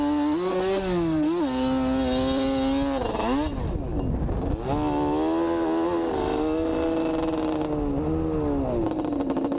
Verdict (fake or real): real